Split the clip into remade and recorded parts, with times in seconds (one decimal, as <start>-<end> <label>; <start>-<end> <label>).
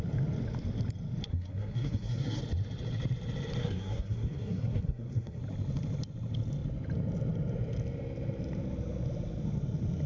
0.0-1.3 recorded; 1.3-2.4 remade; 2.4-3.6 recorded; 3.6-5.4 remade; 5.4-10.1 recorded